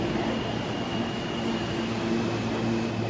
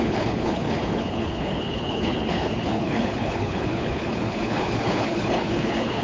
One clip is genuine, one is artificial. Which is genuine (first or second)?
first